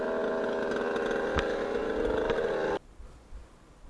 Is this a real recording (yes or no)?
yes